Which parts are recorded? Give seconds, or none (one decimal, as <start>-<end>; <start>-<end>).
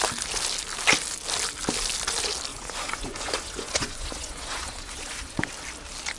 0.0-2.5; 5.5-6.2